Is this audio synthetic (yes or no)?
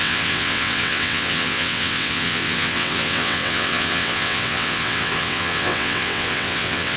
yes